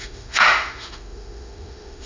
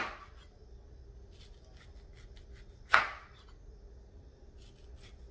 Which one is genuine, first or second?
second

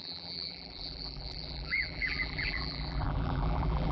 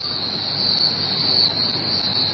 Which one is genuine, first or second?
second